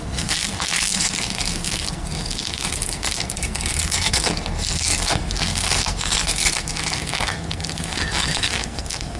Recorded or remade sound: remade